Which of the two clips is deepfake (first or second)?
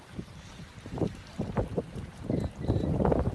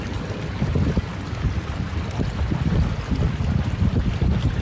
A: first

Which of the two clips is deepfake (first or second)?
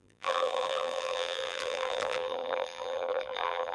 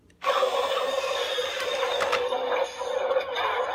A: first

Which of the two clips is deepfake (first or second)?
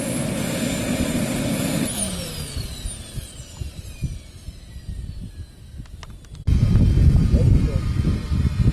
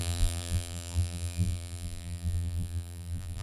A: second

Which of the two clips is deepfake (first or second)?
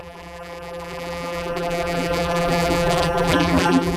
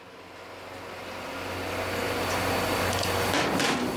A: first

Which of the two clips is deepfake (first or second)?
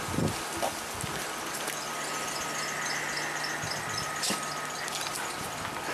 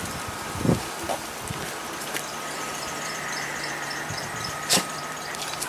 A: second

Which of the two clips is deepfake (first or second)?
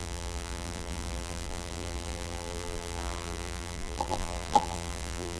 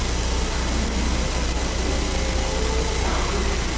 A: first